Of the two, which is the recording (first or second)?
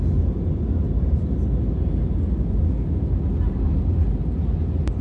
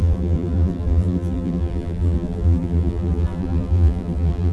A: first